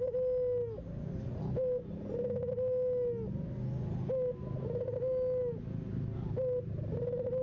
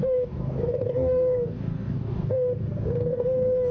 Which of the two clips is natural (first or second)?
first